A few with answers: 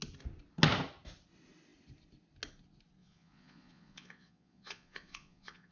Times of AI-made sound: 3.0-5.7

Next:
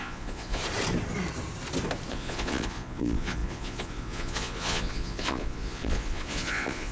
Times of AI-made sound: 0.0-0.6; 2.1-6.9

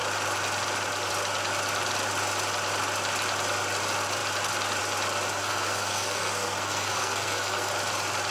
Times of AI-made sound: 5.4-7.7